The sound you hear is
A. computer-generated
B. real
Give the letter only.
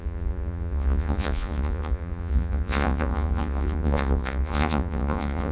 A